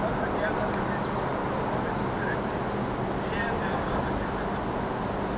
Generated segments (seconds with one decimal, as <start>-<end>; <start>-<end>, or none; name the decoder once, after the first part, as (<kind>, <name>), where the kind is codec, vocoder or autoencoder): none